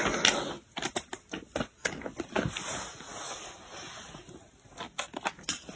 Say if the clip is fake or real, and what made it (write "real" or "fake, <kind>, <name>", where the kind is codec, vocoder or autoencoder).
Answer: real